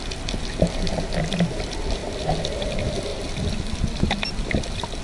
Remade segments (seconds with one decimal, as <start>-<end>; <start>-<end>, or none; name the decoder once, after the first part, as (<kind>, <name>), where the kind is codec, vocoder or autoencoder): none